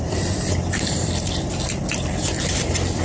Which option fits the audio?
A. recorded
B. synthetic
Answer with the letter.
B